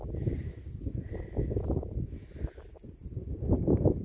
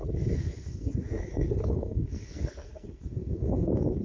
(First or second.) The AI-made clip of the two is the second